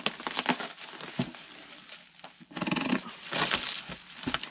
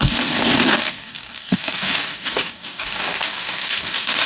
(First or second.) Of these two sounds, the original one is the first